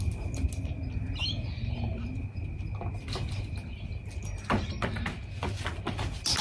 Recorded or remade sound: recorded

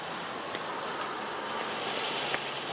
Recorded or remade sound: recorded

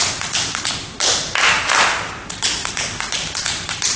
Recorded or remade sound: recorded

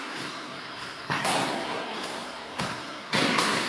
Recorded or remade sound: remade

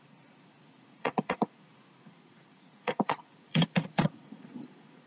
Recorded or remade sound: remade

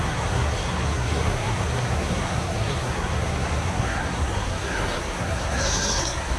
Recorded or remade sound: remade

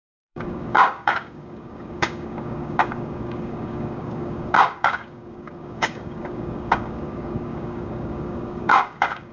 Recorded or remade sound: remade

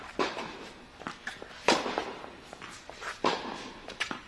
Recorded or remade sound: remade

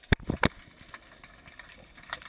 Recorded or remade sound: recorded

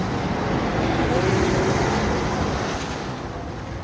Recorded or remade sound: recorded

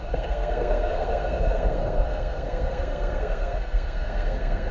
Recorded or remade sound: remade